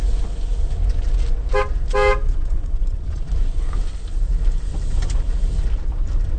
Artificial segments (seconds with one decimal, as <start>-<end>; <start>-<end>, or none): 2.2-3.3